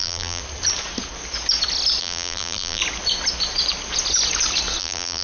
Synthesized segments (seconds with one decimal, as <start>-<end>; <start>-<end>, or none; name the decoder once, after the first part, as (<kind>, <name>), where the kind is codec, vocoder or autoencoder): 0.0-0.4 (vocoder, BigVGAN v2); 2.0-2.8; 4.8-5.2